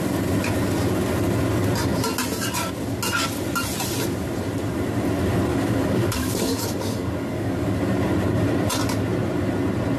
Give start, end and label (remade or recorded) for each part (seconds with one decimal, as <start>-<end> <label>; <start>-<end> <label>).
0.0-5.5 recorded; 5.5-7.8 remade; 7.8-10.0 recorded